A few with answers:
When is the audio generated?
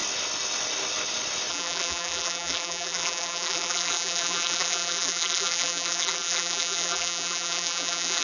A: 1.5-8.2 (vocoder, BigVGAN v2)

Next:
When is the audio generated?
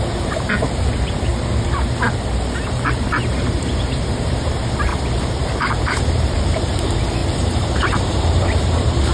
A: 0.0-1.3 (vocoder, BigVGAN v2); 3.5-4.9; 5.8-9.1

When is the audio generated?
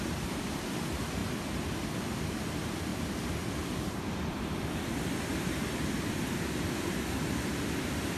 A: 0.0-1.2 (vocoder, BigVGAN v2); 1.8-2.9; 3.5-8.2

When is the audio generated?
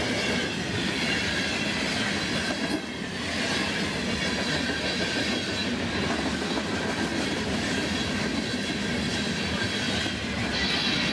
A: 3.6-4.2 (vocoder, BigVGAN v2); 9.1-10.6